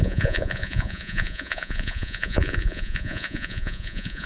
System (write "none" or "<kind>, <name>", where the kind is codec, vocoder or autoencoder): vocoder, Vocos